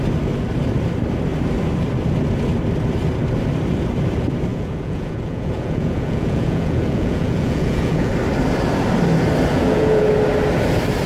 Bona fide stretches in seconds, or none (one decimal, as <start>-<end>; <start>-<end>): 0.0-4.5; 8.1-9.5; 10.1-11.1